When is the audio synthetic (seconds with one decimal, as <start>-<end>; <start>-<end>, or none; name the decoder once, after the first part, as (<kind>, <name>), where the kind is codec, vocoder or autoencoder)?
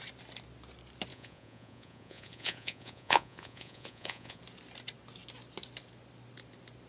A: 1.1-4.4 (vocoder, Vocos)